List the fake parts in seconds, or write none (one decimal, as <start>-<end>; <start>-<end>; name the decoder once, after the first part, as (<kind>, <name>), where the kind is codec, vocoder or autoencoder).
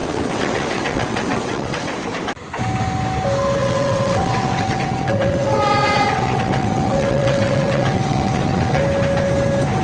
0.0-1.9 (vocoder, WaveNeXt); 3.6-8.8